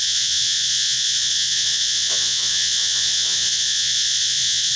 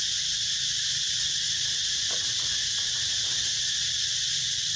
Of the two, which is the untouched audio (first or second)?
second